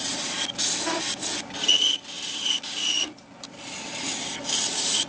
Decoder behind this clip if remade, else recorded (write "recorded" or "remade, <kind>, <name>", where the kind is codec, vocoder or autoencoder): recorded